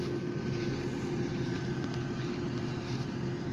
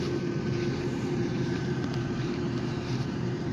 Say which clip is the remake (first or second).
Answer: second